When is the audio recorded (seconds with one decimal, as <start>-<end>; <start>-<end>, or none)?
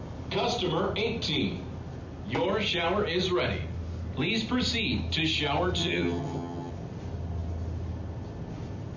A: 0.0-5.8; 6.7-9.0